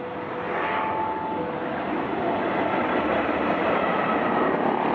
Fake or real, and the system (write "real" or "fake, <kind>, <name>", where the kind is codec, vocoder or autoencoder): real